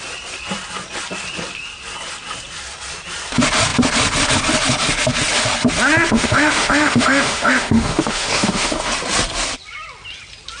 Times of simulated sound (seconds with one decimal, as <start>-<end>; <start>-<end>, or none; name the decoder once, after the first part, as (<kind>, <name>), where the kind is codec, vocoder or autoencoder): 6.1-8.9 (autoencoder, DAC-VAE)